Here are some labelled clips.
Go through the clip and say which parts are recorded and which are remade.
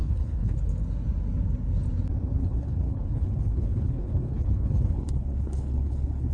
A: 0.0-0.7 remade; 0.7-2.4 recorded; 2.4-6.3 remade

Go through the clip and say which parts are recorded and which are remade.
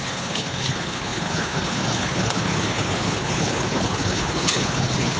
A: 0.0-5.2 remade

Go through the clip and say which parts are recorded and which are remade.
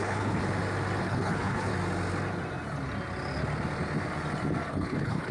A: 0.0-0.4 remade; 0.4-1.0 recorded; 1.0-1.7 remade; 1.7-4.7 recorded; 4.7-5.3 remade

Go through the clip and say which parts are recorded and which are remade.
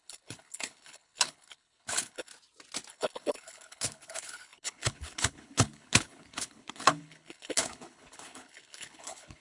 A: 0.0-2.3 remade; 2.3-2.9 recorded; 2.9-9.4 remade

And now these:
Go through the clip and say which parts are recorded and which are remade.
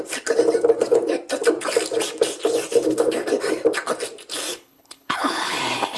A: 0.0-4.5 recorded; 4.5-5.6 remade; 5.6-6.0 recorded